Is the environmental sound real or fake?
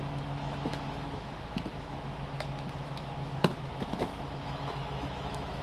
fake